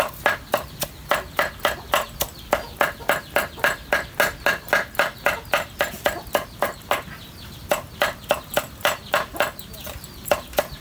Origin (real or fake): real